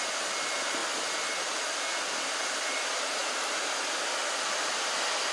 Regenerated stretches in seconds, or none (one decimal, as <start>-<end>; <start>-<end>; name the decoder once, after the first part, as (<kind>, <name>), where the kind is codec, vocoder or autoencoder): 0.0-5.3 (vocoder, BigVGAN v2)